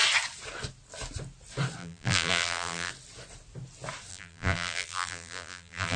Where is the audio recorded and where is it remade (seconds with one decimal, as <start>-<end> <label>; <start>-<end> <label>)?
0.0-1.8 recorded; 1.8-2.9 remade; 2.9-4.1 recorded; 4.1-6.0 remade